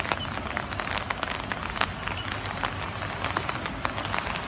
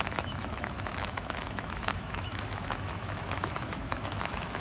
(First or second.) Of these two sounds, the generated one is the second